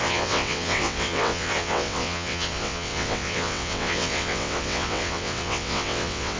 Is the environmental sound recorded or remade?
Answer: remade